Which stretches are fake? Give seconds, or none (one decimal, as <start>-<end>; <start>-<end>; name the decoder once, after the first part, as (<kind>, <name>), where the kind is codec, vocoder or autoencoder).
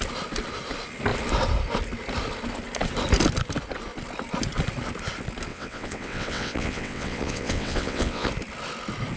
5.5-8.3 (vocoder, WaveNeXt)